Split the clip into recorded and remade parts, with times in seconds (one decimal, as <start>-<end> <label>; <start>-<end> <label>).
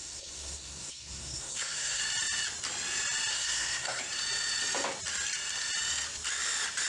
0.0-2.0 remade; 2.0-3.3 recorded; 3.3-4.0 remade; 4.0-6.9 recorded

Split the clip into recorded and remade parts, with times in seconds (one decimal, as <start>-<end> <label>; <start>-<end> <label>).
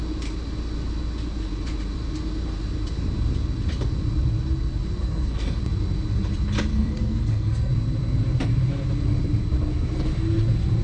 0.0-5.0 recorded; 5.0-5.6 remade; 5.6-6.7 recorded; 6.7-7.7 remade; 7.7-10.8 recorded